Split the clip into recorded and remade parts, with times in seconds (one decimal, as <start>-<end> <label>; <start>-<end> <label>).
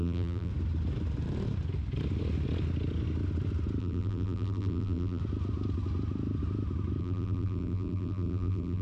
0.0-0.5 remade; 0.5-3.8 recorded; 3.8-5.2 remade; 5.2-7.0 recorded; 7.0-8.8 remade